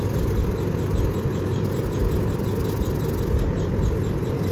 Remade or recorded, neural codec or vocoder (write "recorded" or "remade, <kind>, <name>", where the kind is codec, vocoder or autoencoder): recorded